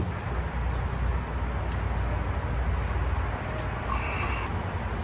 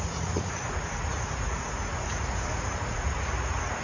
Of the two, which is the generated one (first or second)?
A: second